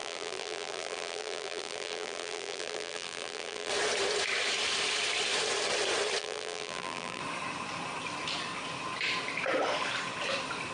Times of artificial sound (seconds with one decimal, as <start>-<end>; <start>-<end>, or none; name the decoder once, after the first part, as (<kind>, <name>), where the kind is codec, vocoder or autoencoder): 0.0-3.7 (vocoder, BigVGAN v2); 6.2-7.2